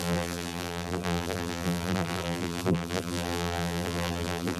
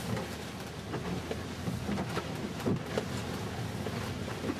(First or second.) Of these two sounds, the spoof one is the first